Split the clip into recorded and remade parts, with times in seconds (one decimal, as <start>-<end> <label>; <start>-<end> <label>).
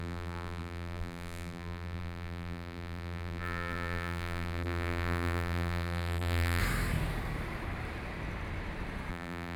0.0-6.6 remade; 6.6-9.1 recorded; 9.1-9.6 remade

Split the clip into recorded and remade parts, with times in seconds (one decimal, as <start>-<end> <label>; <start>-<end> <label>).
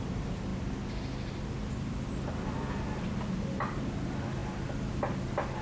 0.0-5.6 recorded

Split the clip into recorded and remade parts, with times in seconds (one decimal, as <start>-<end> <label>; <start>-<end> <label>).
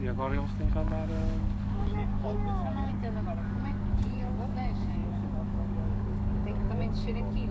0.0-7.5 remade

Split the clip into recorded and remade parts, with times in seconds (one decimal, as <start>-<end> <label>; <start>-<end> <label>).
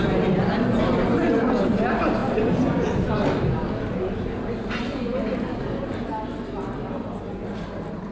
0.0-8.1 recorded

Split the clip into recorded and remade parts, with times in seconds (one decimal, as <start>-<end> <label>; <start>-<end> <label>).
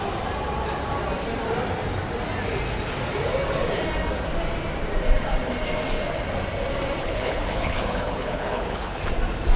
0.0-7.0 recorded; 7.0-9.0 remade; 9.0-9.6 recorded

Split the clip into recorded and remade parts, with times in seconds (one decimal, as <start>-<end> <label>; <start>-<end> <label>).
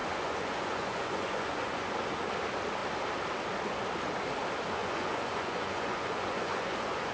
0.0-1.9 remade; 1.9-4.8 recorded; 4.8-7.1 remade